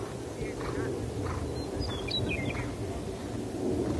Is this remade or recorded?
recorded